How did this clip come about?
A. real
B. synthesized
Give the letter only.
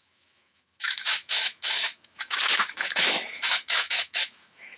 B